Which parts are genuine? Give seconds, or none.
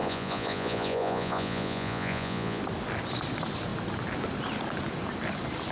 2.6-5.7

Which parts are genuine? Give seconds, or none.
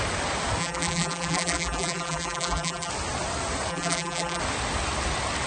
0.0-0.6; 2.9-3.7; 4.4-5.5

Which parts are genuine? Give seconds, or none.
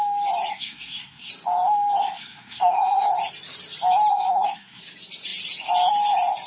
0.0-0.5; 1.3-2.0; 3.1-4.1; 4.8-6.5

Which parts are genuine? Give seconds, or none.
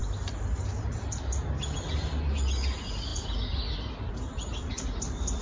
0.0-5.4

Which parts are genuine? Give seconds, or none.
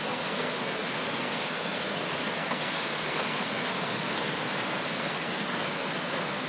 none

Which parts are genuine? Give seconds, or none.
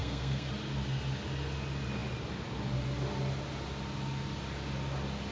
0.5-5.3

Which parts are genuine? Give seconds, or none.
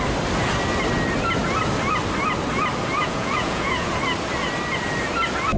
0.0-3.0; 3.9-5.6